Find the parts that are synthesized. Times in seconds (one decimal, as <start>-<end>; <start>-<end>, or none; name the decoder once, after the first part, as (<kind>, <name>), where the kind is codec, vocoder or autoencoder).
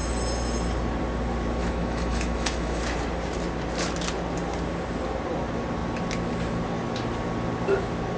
1.6-2.8 (autoencoder, DAC-VAE)